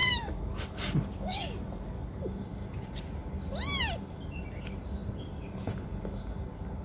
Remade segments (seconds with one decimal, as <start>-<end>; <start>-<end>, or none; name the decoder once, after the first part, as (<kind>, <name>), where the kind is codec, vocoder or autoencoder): 0.0-2.2 (codec, DAC)